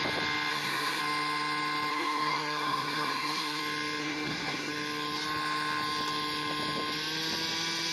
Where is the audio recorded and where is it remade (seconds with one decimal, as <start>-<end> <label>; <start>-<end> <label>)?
0.0-0.5 recorded; 0.5-1.0 remade; 1.0-1.9 recorded; 1.9-3.6 remade; 3.6-4.0 recorded; 4.0-4.7 remade; 4.7-7.9 recorded